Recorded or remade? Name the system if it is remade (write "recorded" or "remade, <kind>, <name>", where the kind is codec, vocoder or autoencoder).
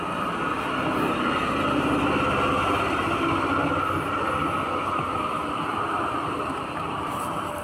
recorded